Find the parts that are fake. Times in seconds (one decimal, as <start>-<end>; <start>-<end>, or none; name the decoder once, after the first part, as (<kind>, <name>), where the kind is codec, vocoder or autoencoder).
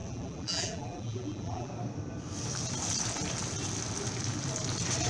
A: 0.0-1.7 (vocoder, BigVGAN v2)